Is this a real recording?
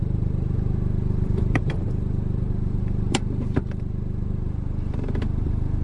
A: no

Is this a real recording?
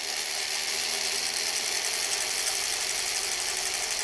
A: yes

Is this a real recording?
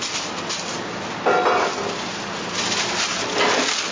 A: yes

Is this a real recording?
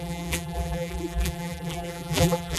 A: no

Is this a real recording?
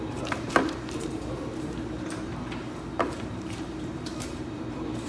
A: no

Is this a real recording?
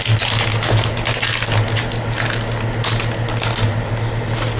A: yes